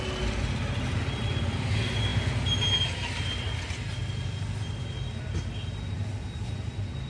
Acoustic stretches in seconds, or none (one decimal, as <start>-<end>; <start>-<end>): 0.0-7.1